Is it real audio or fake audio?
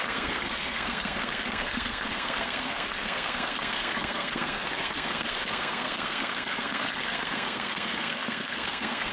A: fake